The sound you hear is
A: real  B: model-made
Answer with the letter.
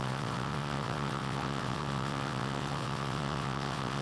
B